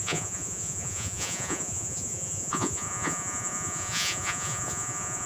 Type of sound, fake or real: fake